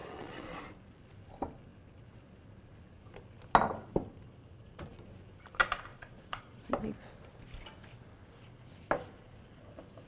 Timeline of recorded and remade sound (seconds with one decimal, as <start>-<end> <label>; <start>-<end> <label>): 0.0-0.6 remade; 0.6-5.9 recorded; 5.9-6.6 remade; 6.6-10.1 recorded